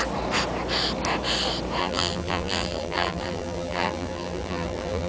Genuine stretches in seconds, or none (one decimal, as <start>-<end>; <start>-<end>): 0.0-1.8